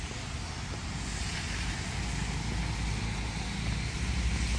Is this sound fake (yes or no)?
no